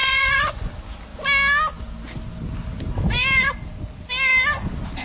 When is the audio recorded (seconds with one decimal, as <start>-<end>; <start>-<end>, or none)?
0.7-5.0